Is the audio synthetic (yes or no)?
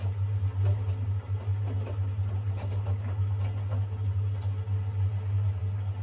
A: no